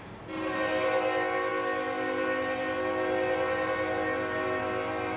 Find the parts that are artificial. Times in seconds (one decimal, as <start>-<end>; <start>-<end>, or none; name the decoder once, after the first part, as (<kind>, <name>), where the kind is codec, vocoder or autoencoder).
none

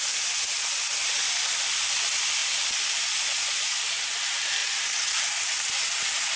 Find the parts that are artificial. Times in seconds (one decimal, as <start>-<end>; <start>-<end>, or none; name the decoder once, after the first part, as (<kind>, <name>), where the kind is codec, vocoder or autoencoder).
none

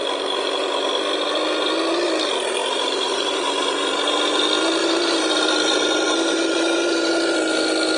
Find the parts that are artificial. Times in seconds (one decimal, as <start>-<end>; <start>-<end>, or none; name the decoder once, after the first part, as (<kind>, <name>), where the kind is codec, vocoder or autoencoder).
2.6-3.9 (vocoder, BigVGAN v2); 4.8-7.1